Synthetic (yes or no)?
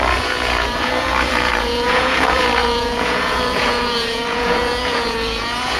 yes